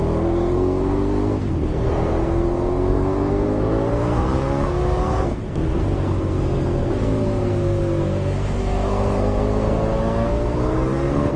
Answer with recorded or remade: remade